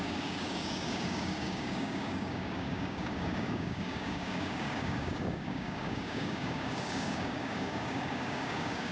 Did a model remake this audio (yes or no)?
yes